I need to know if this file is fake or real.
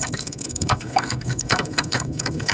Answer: fake